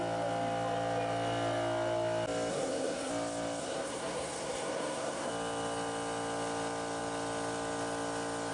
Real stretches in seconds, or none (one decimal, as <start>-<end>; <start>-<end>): 0.0-2.5; 3.1-3.6; 5.3-8.5